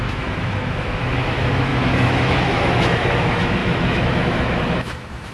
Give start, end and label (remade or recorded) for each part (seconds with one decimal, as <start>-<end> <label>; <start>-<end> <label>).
0.0-5.3 remade